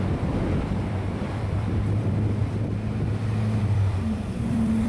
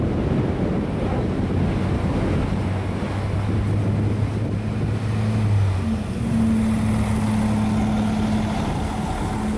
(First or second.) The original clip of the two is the second